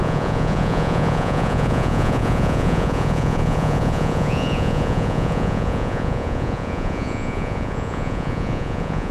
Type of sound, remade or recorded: remade